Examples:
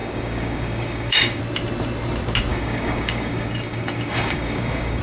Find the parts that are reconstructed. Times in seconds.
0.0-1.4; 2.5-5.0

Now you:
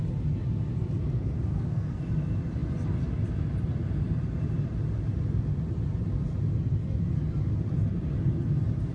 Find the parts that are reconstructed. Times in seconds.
1.5-2.0

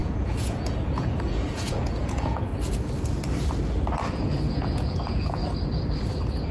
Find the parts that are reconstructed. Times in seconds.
0.0-2.5; 4.1-5.4

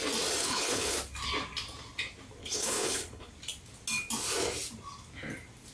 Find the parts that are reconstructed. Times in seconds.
0.4-0.9; 2.4-3.3

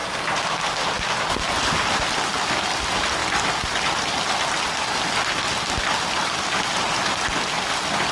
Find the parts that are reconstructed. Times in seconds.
none